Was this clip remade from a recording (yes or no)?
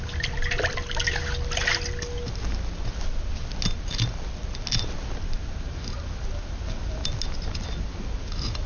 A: no